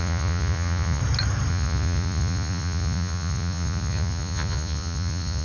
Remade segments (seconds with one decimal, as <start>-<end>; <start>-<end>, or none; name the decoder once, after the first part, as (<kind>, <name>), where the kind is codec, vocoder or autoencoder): 0.0-1.0 (vocoder, Vocos); 1.5-5.4